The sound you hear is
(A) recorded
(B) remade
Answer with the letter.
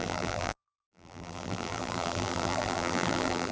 B